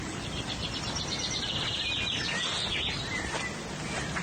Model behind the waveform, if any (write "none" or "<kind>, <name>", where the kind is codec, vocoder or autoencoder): none